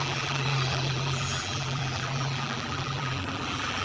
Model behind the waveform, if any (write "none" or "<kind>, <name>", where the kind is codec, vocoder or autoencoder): vocoder, BigVGAN v2